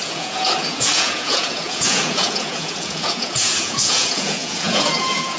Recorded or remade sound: remade